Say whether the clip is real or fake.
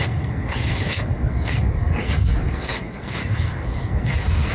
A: fake